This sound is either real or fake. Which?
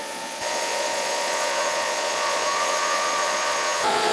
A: fake